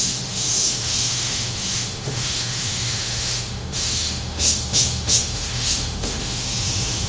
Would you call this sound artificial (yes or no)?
yes